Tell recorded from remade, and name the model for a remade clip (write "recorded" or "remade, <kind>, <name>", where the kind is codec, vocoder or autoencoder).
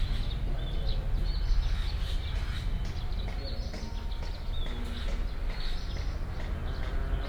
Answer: recorded